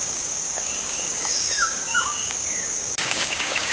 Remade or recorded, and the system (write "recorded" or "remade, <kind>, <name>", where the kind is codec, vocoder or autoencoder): remade, codec, DAC